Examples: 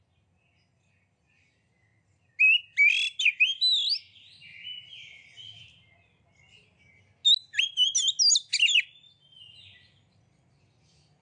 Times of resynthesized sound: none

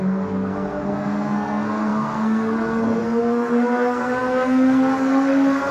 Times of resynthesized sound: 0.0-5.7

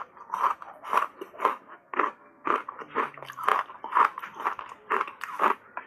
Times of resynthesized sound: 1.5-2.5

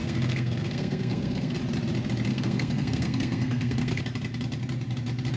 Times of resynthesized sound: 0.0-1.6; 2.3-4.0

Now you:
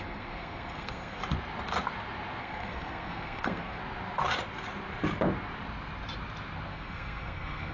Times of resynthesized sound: 0.0-1.2; 2.4-3.8; 6.7-7.7